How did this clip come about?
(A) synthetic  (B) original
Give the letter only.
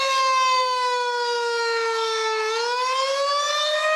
A